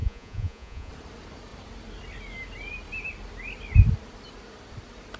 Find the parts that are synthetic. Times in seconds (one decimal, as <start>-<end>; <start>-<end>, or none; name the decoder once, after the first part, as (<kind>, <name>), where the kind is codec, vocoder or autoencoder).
0.0-0.9 (vocoder, Vocos)